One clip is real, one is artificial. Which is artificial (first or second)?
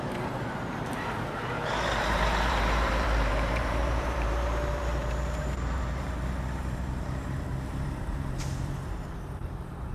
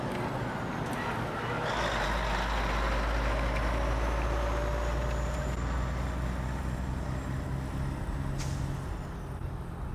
first